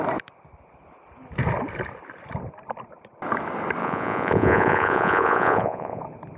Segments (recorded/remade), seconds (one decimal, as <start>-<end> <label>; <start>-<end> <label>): 0.0-3.8 recorded; 3.8-6.0 remade; 6.0-6.4 recorded